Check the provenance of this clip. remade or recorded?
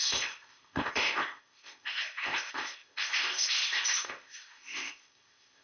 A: remade